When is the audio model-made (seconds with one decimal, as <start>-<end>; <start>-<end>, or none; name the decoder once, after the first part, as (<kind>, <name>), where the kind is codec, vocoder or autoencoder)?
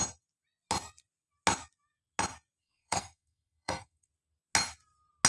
2.6-4.1 (codec, SNAC)